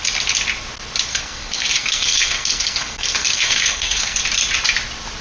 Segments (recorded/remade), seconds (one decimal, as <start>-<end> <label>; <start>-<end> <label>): 0.0-1.1 recorded; 1.1-4.2 remade; 4.2-5.2 recorded